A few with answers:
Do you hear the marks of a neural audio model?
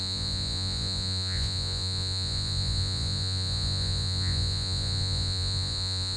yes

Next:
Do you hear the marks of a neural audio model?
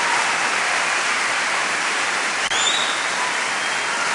no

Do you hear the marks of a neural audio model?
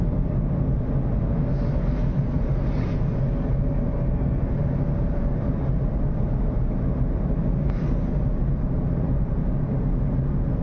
no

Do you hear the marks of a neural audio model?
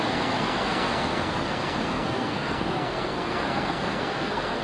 yes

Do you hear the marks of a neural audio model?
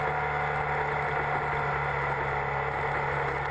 no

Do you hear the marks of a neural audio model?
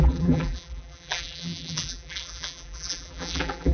yes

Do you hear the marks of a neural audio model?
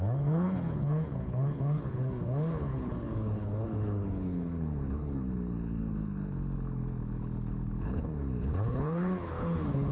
yes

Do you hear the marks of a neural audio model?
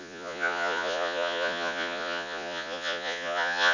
yes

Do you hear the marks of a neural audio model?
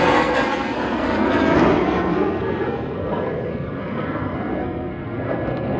yes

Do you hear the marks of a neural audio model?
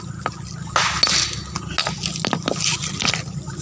no